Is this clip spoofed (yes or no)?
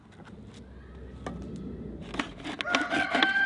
no